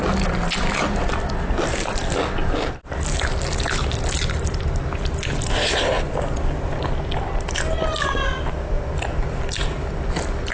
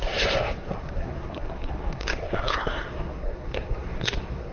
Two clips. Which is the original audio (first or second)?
first